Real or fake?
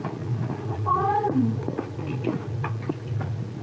fake